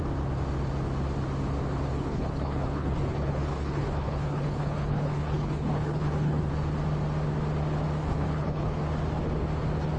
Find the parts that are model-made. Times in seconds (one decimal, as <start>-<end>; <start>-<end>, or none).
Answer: 1.9-6.5; 8.0-8.8